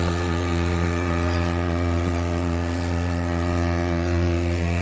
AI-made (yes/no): yes